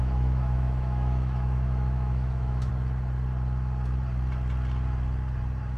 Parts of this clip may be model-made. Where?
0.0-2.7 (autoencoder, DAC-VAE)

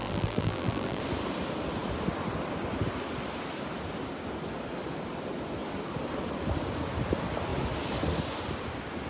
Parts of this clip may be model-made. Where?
0.0-1.0 (vocoder, BigVGAN v2)

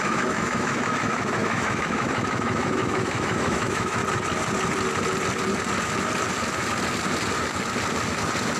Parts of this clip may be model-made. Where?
0.0-4.0 (autoencoder, DAC-VAE)

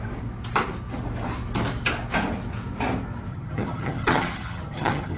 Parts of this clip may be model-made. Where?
3.3-5.2 (vocoder, HiFi-GAN)

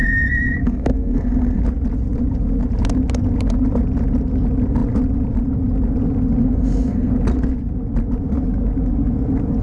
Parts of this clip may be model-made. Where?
0.6-1.6 (codec, SNAC); 6.4-7.1

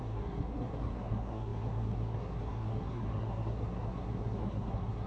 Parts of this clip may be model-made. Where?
0.0-5.1 (codec, SNAC)